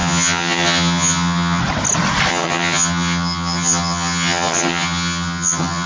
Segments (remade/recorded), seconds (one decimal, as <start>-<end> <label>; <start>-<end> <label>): 0.0-1.6 remade; 1.6-2.3 recorded; 2.3-5.9 remade